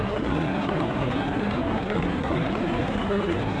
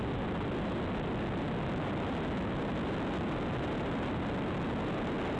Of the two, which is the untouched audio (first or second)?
second